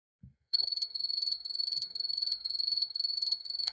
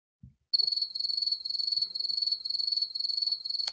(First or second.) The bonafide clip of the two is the second